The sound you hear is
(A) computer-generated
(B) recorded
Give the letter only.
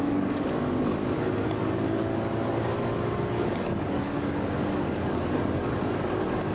A